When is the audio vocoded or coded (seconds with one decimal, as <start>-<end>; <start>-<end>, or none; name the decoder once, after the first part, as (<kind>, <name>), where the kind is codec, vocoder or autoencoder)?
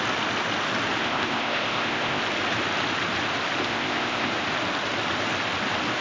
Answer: 1.0-2.2 (codec, ZipCodec); 3.6-4.3